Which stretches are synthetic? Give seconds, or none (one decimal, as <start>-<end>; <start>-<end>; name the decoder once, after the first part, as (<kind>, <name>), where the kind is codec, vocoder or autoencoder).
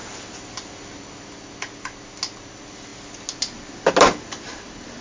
none